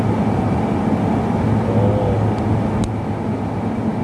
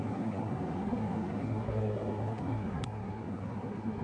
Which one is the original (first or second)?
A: first